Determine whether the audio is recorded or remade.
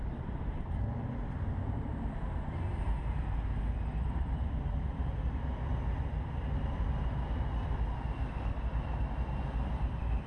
remade